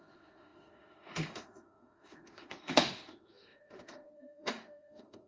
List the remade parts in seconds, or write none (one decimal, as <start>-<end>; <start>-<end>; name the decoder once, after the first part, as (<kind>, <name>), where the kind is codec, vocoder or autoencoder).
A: 0.0-5.3 (autoencoder, DAC-VAE)